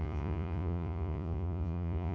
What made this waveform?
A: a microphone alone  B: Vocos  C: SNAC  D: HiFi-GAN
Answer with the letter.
B